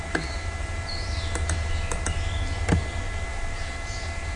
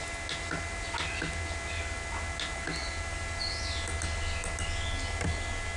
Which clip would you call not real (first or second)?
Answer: first